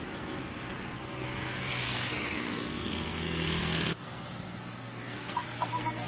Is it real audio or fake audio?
fake